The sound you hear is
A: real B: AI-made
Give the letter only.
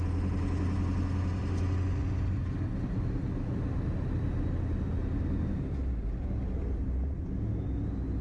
A